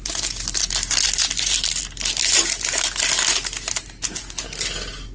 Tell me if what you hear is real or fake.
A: real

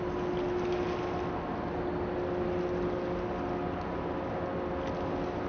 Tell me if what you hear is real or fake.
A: real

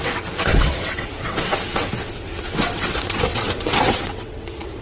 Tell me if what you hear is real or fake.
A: fake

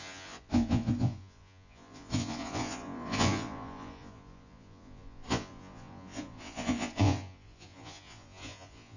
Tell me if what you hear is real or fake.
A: fake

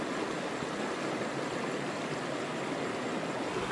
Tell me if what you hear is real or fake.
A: real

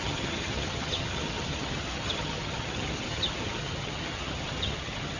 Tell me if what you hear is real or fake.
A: fake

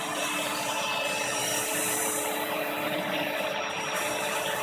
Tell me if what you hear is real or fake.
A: fake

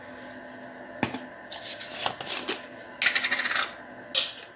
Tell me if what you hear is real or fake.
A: real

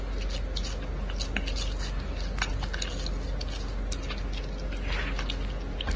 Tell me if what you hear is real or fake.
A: real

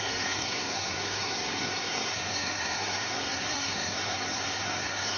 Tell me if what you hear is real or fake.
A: fake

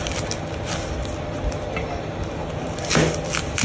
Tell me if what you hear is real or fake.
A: real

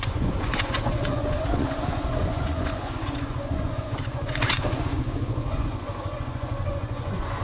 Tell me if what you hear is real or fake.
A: fake